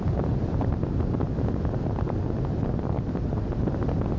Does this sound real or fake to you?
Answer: real